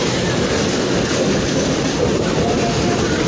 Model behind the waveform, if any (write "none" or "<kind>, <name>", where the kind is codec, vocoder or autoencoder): none